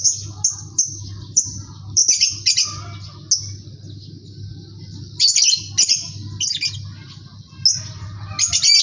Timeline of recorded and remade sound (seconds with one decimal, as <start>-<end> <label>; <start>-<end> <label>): 0.0-2.0 remade; 2.0-4.5 recorded; 4.5-5.3 remade; 5.3-8.8 recorded